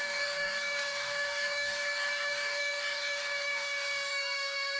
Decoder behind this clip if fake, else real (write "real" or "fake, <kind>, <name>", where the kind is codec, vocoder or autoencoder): fake, codec, DAC